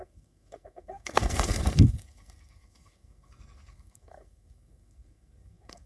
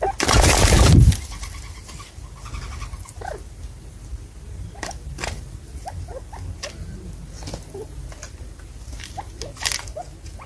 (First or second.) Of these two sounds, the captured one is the second